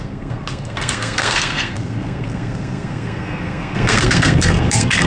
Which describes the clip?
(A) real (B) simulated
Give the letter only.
B